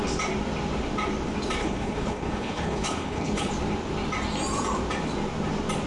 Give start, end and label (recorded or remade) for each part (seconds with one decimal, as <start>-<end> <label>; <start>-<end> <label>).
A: 0.0-1.6 recorded; 1.6-3.5 remade; 3.5-5.9 recorded